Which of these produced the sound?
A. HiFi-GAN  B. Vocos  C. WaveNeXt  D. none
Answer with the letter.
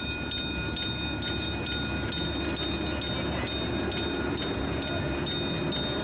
D